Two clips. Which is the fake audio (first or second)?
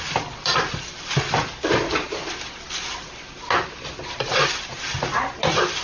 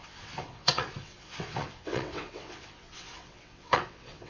second